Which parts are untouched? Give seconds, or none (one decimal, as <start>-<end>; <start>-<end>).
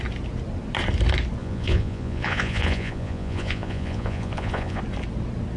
0.0-1.4; 4.8-5.6